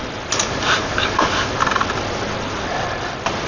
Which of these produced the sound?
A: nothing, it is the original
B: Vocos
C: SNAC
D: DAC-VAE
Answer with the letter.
A